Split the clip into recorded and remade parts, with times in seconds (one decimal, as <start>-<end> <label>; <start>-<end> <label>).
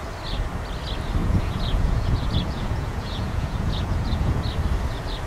0.0-1.2 recorded; 1.2-4.4 remade; 4.4-5.3 recorded